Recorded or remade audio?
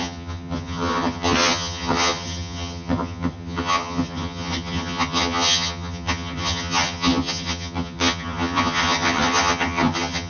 remade